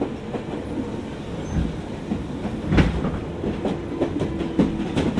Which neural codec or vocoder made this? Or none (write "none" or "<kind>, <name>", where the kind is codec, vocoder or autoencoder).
none